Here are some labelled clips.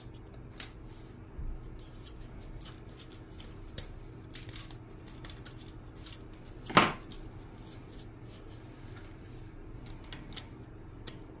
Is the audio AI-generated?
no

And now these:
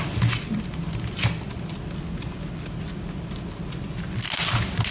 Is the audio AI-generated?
no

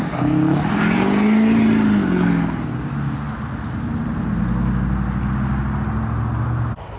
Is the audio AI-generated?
no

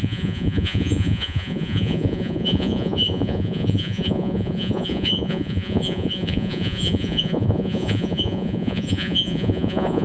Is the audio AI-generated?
yes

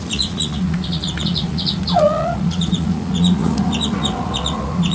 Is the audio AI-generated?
yes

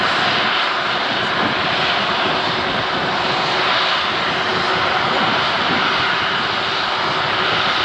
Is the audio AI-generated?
no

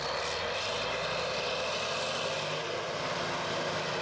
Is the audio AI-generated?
no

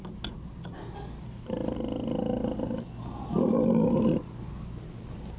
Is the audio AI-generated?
no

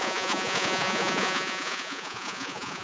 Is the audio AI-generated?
yes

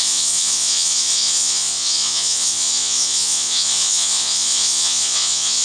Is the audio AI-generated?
yes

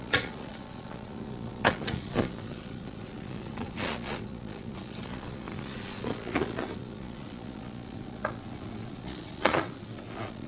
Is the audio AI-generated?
yes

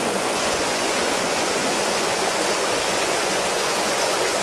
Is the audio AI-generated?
yes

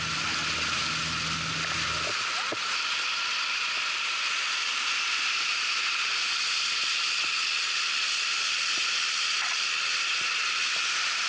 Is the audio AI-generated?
no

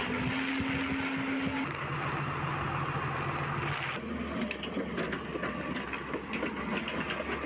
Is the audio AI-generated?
no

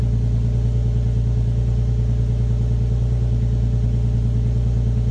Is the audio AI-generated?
no